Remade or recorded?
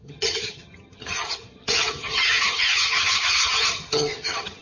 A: remade